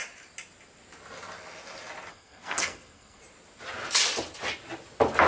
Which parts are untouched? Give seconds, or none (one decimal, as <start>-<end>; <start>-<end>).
0.0-2.1; 3.2-5.3